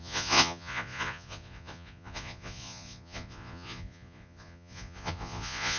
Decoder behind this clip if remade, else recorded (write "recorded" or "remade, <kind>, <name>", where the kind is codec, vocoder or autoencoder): remade, vocoder, Vocos